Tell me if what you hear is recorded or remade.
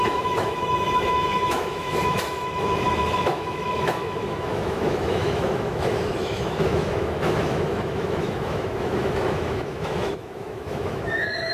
remade